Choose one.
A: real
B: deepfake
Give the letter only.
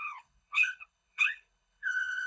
B